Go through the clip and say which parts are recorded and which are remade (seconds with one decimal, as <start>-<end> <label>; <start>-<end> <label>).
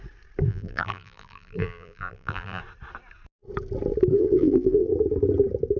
0.0-0.5 recorded; 0.5-2.6 remade; 2.6-4.1 recorded; 4.1-4.9 remade; 4.9-5.8 recorded